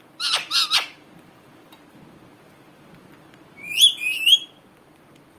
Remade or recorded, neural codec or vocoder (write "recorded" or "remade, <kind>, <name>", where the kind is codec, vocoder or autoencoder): remade, vocoder, BigVGAN v2